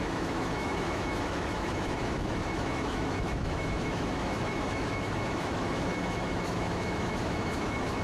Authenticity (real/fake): fake